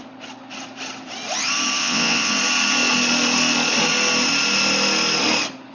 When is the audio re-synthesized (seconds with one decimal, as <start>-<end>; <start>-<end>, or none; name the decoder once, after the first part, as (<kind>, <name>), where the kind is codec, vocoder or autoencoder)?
1.8-2.3 (vocoder, WaveNeXt)